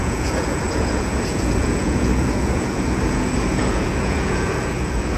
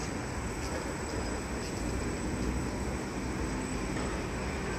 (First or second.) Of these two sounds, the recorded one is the second